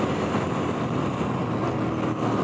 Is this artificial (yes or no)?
no